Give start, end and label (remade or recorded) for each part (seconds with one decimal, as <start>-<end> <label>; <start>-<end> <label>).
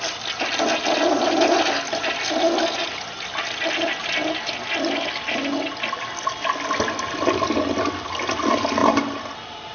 0.0-9.7 recorded